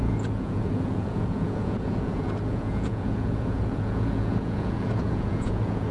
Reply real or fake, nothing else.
fake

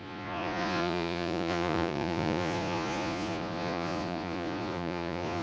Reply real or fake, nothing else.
fake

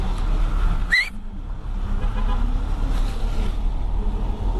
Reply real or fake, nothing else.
real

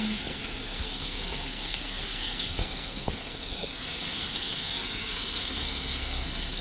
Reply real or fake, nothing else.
fake